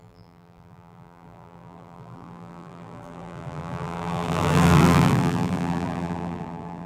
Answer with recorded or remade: remade